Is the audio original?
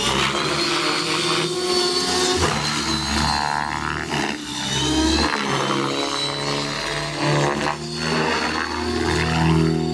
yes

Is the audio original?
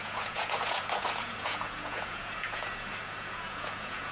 no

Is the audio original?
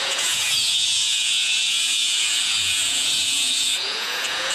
no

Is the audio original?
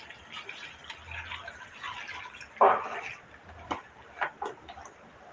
yes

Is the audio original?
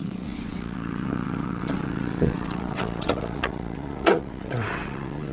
no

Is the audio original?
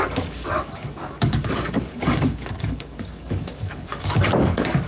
no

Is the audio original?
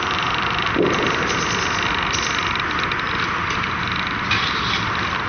yes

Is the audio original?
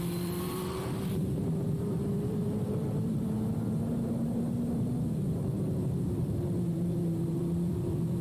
no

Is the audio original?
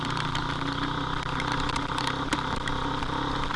yes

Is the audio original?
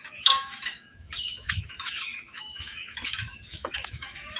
no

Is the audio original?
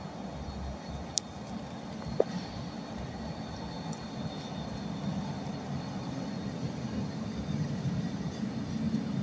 yes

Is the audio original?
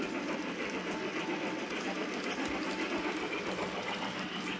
yes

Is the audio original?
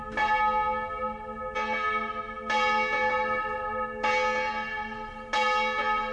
yes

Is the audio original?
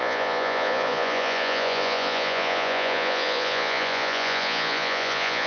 no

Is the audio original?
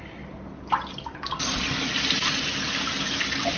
yes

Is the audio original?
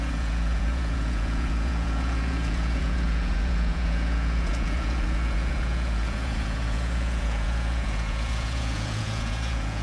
no